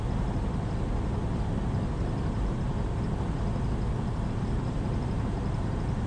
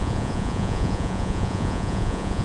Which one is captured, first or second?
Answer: first